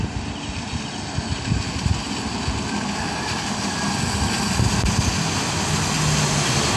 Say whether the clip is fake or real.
real